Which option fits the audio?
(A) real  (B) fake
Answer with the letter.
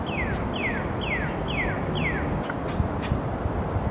A